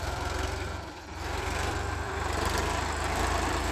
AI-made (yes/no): yes